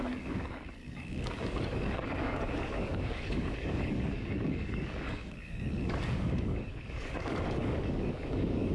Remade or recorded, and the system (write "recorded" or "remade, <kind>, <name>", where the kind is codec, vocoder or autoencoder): remade, codec, DAC